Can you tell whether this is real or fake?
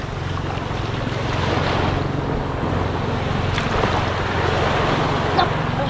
real